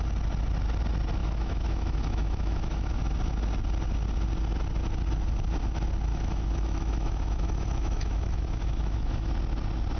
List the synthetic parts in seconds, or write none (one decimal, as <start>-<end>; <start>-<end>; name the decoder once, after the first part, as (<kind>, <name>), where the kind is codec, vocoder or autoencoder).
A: 1.2-3.0 (autoencoder, DAC-VAE); 6.1-9.3